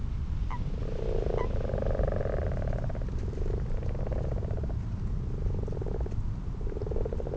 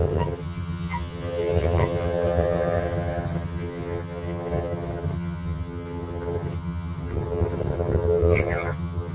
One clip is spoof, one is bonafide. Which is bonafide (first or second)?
first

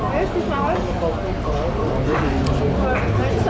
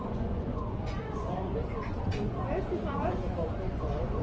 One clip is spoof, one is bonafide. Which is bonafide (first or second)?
first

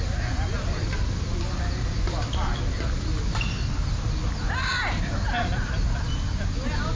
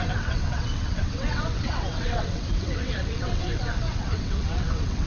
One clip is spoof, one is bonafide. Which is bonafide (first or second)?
first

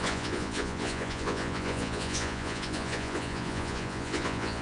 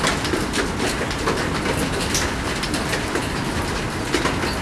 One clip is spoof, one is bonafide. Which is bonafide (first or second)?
second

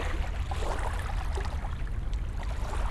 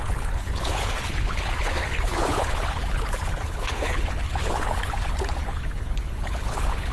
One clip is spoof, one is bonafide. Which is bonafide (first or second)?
first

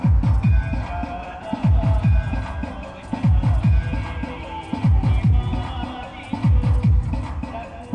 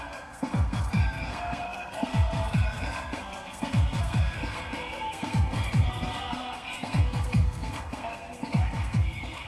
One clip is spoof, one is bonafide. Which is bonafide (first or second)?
first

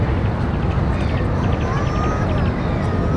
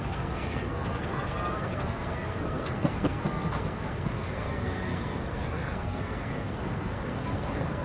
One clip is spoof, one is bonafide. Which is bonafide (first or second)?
first